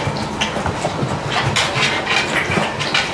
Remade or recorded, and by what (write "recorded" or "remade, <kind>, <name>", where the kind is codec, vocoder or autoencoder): recorded